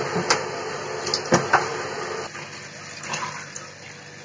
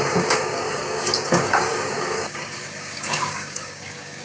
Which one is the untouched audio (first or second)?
first